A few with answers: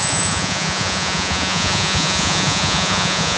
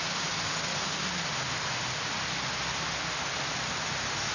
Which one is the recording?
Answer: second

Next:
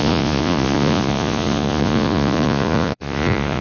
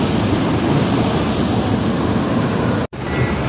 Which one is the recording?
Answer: second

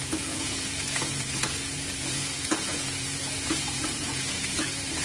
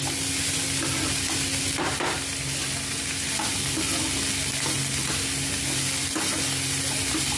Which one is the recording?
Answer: second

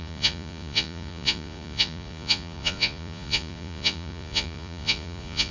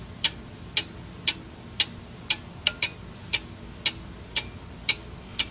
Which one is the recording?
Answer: second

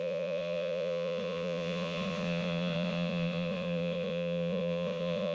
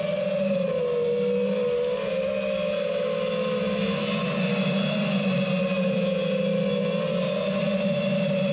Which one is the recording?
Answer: second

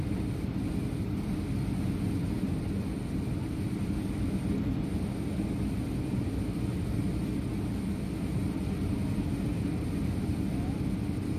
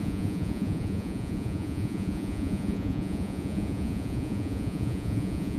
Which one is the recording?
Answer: first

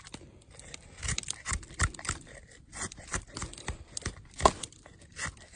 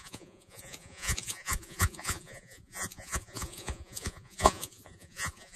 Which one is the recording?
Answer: first